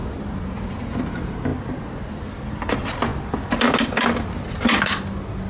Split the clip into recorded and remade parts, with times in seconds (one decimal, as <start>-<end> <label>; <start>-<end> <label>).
0.0-5.5 recorded